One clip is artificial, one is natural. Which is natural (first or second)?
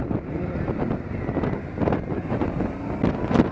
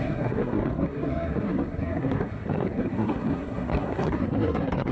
first